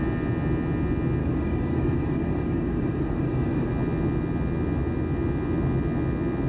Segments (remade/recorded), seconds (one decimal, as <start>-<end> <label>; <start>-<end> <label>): 0.0-1.2 recorded; 1.2-3.7 remade; 3.7-6.5 recorded